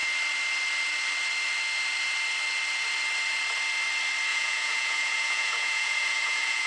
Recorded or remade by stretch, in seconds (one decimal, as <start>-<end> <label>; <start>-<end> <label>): 0.0-4.3 recorded; 4.3-6.7 remade